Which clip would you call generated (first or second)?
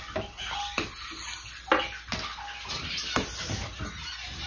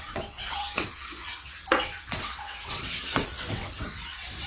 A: second